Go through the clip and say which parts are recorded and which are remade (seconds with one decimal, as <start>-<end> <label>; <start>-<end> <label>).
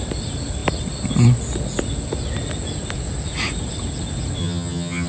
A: 0.0-4.4 recorded; 4.4-5.1 remade